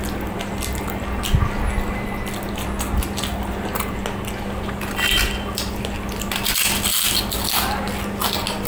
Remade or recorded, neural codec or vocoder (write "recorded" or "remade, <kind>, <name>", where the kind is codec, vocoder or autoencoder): recorded